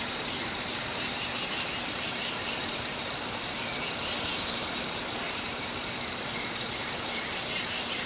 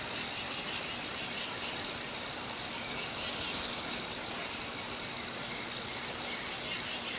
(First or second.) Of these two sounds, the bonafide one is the second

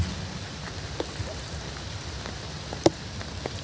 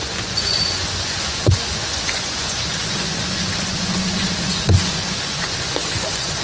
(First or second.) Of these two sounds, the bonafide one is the first